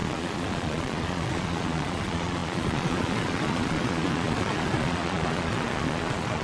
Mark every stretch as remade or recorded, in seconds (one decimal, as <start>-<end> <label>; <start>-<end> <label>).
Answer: 0.0-6.4 remade